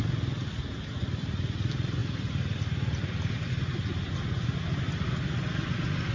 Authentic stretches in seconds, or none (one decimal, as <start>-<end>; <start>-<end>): 0.0-6.1